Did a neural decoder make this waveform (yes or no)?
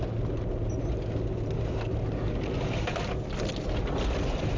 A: no